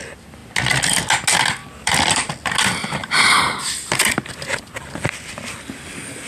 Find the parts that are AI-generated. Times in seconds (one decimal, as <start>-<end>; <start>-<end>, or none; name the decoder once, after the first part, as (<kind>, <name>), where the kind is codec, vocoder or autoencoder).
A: 1.6-2.3 (vocoder, BigVGAN v2); 3.0-5.3